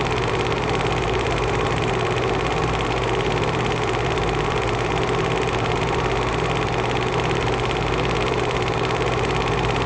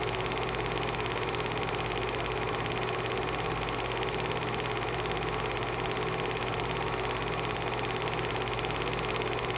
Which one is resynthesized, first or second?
first